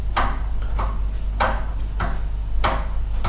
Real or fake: real